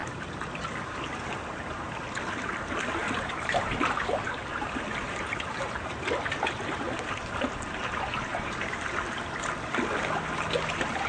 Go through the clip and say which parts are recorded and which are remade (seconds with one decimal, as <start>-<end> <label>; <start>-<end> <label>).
0.0-0.7 remade; 0.7-3.0 recorded; 3.0-5.9 remade; 5.9-8.3 recorded; 8.3-8.8 remade; 8.8-11.1 recorded